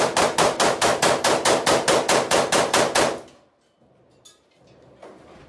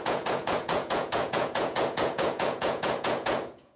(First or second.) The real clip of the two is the first